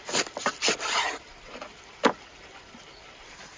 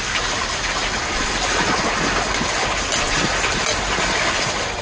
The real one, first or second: second